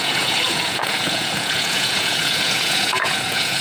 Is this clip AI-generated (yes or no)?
yes